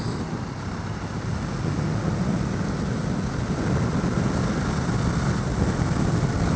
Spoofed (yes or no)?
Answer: no